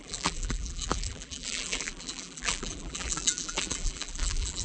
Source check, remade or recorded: remade